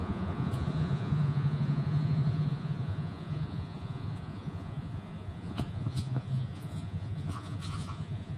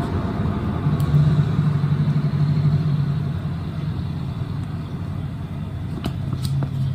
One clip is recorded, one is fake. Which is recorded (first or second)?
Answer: second